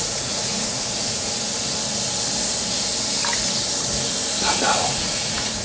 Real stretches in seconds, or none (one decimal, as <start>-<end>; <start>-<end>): 1.3-4.5